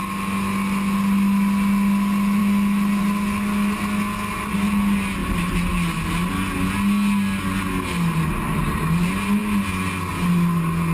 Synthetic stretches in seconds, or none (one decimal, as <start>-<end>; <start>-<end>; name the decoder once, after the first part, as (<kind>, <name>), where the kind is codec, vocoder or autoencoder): 5.2-6.3 (vocoder, BigVGAN v2)